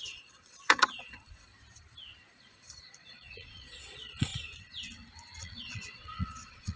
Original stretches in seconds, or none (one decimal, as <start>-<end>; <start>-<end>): 1.5-2.4; 4.3-5.4